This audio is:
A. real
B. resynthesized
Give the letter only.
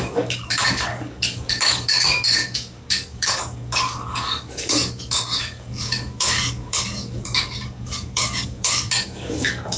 B